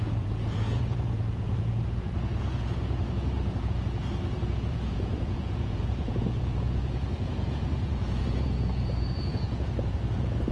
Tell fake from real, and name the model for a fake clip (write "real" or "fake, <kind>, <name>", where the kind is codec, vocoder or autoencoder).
fake, vocoder, Vocos